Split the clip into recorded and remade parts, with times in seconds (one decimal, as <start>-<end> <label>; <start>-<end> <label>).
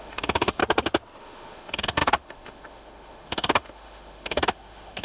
0.0-0.6 remade; 0.6-1.2 recorded; 1.2-5.0 remade